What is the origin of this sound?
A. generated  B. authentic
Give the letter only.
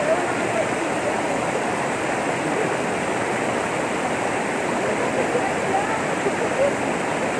B